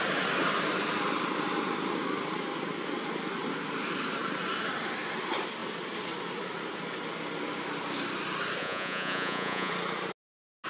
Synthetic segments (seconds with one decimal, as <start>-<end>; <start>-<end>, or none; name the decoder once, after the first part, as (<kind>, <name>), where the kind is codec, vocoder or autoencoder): 8.6-9.7 (vocoder, Vocos)